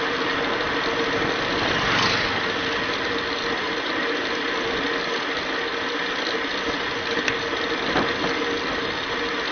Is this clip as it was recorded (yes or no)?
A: yes